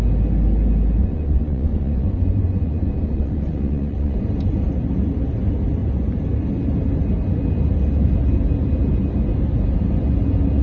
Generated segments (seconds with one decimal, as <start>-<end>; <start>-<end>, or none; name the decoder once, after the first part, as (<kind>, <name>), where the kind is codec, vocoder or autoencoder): 1.0-4.2 (vocoder, Vocos)

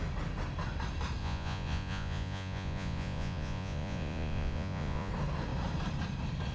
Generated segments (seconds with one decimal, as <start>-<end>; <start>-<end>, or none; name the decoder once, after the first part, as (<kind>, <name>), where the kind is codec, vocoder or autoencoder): 1.2-5.1 (vocoder, Vocos)

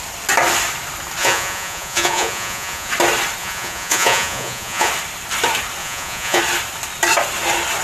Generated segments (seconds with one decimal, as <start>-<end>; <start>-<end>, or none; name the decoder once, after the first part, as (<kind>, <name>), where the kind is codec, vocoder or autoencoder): 1.2-2.9 (vocoder, Vocos); 3.4-4.9; 5.8-6.4

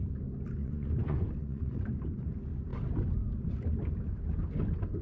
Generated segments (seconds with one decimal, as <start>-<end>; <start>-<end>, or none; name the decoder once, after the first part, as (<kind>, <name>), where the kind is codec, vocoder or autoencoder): 0.6-1.8 (vocoder, Vocos)

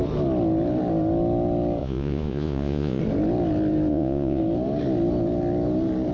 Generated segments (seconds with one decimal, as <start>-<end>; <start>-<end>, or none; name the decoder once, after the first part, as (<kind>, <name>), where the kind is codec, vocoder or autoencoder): 1.8-3.0 (vocoder, Vocos); 3.9-4.4

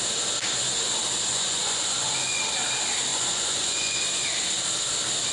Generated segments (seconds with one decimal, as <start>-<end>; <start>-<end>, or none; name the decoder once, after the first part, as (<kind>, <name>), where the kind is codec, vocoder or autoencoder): 1.3-2.4 (vocoder, Vocos); 3.1-4.0

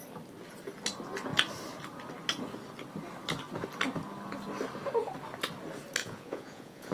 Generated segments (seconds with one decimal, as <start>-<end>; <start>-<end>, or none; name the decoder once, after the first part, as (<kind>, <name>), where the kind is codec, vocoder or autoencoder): 6.0-6.9 (vocoder, Vocos)